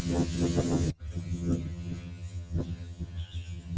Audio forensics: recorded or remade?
remade